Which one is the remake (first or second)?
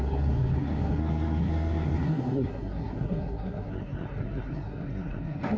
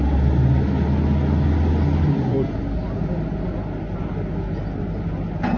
first